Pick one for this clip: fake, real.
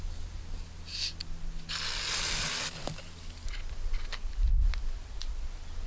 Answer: real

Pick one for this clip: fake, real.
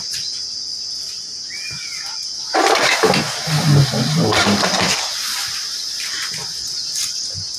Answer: real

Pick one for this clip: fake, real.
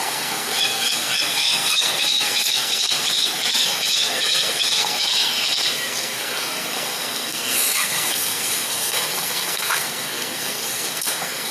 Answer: fake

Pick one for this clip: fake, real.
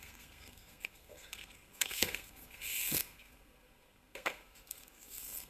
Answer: fake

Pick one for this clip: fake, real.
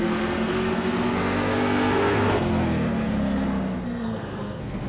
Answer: fake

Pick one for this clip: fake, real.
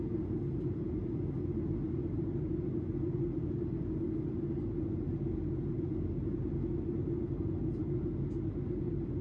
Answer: real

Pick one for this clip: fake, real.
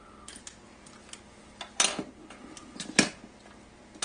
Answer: real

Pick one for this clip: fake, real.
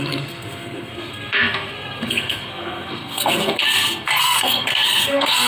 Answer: fake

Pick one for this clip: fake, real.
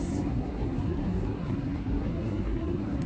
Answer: fake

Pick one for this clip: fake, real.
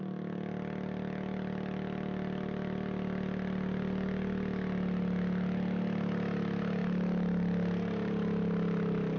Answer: real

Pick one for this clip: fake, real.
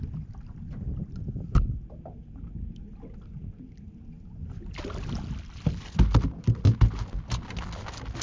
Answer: real